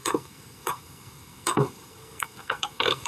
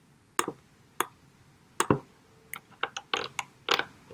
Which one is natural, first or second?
second